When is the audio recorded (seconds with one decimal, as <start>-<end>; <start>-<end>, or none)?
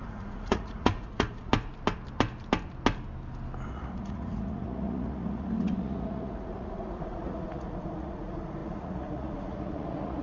1.5-3.7